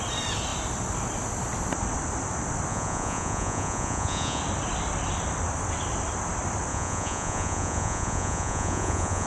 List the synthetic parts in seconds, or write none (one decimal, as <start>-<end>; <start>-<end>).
2.7-4.4; 6.7-9.3